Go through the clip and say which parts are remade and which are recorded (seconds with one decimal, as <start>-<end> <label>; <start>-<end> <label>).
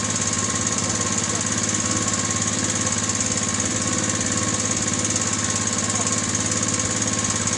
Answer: 0.0-7.6 recorded